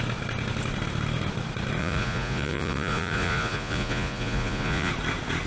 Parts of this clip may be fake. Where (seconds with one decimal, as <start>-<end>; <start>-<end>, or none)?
1.8-4.9